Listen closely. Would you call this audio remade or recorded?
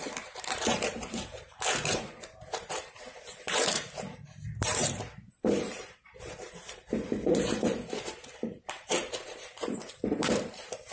remade